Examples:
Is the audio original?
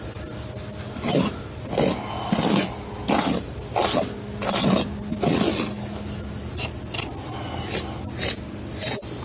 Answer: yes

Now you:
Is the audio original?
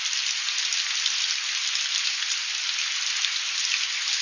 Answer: yes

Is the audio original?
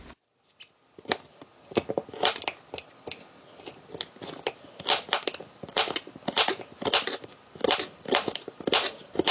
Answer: yes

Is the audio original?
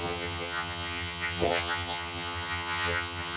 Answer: no